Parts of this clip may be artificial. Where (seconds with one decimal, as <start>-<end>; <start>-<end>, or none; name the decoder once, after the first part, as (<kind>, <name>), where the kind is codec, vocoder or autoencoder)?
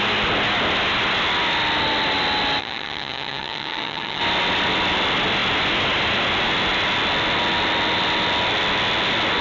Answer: 2.6-4.2 (vocoder, HiFi-GAN)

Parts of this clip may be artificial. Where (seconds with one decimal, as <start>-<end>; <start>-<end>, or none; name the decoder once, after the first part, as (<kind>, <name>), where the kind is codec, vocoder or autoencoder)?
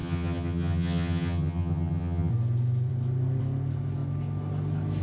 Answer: 0.0-2.3 (vocoder, HiFi-GAN)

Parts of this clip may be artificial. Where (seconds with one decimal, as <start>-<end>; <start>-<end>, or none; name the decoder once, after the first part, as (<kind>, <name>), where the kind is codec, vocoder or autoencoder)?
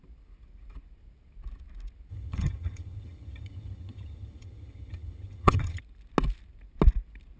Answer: 2.1-5.8 (vocoder, HiFi-GAN)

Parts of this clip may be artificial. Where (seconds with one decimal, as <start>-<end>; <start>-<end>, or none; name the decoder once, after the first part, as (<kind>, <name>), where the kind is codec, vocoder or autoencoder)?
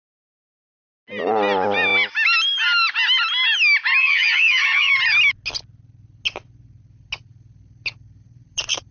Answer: 4.0-4.9 (vocoder, HiFi-GAN)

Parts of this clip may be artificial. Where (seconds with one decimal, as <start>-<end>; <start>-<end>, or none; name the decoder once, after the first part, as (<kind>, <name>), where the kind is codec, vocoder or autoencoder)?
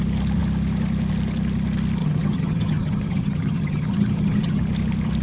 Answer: 2.0-4.6 (vocoder, HiFi-GAN)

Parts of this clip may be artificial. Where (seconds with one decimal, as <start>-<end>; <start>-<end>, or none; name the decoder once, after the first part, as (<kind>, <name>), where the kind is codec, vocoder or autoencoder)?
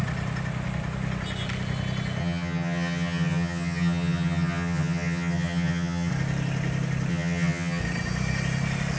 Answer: 2.2-6.1 (vocoder, HiFi-GAN); 7.1-7.8